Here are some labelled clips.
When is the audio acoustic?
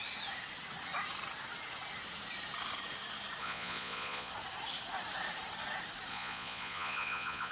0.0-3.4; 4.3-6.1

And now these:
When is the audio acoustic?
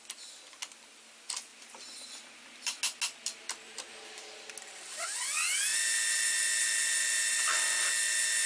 0.0-8.5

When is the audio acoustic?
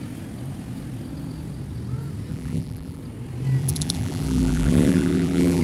0.0-2.3; 3.0-3.6